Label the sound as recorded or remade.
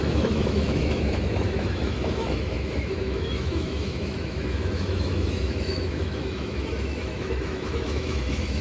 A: remade